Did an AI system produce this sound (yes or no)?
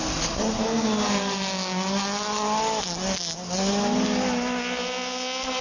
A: no